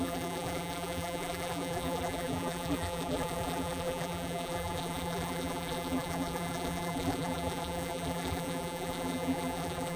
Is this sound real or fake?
fake